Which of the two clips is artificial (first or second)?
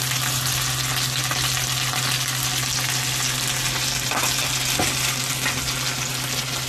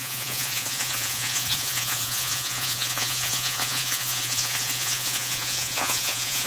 second